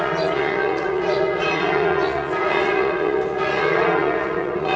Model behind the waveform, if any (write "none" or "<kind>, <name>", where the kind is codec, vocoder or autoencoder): vocoder, Vocos